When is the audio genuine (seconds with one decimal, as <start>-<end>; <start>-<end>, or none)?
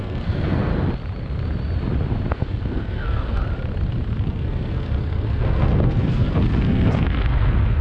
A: 0.7-2.3; 3.4-4.2